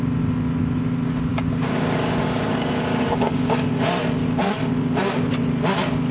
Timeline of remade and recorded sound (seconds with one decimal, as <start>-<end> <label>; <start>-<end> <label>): 0.0-1.3 recorded; 1.3-3.7 remade; 3.7-6.1 recorded